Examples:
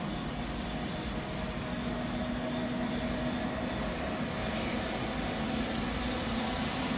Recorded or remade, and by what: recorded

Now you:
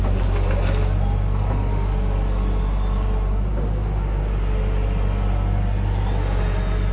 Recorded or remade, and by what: recorded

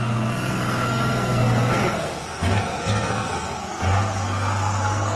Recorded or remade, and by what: remade, codec, SNAC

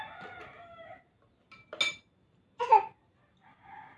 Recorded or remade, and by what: recorded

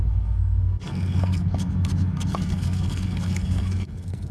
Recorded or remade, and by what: remade, codec, SNAC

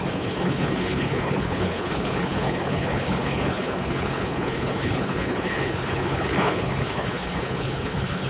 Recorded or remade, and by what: remade, codec, HILCodec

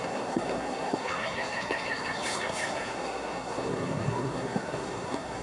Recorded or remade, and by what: remade, codec, SNAC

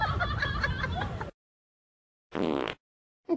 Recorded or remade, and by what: recorded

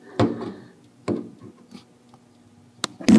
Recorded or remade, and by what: recorded